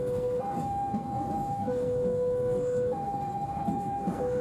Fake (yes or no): yes